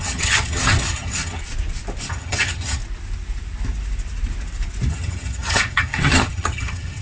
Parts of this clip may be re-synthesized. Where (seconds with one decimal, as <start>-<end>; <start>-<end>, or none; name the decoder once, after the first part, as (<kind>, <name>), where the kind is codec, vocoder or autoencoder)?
0.0-1.4 (vocoder, HiFi-GAN); 2.0-2.8; 4.9-7.0

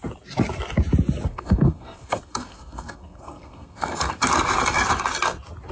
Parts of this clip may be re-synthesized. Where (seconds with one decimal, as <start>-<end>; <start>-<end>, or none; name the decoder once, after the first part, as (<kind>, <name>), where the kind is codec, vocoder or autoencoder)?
1.3-4.1 (codec, SNAC)

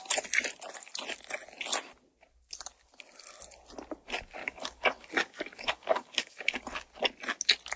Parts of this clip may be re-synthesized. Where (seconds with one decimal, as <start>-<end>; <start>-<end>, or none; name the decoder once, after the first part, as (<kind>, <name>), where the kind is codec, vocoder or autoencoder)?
4.4-6.6 (codec, DAC)